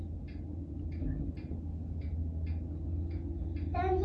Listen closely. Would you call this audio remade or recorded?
recorded